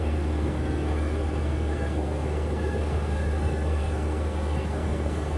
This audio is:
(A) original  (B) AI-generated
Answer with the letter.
B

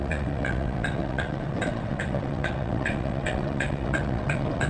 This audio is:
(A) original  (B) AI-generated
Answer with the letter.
B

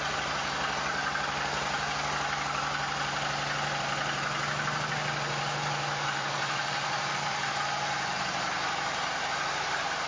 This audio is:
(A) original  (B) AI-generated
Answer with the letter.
A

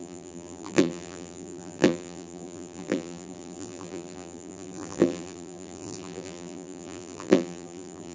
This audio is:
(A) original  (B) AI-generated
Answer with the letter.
B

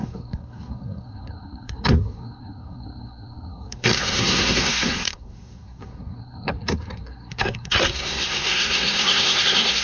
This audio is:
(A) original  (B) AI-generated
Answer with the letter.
B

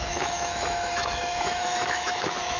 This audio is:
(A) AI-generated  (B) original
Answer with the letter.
A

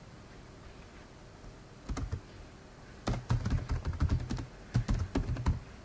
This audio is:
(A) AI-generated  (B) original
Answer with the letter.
B